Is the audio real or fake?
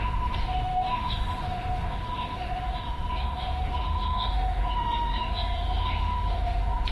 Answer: fake